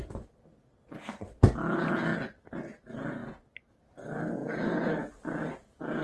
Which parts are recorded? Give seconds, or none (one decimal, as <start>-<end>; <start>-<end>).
0.0-6.0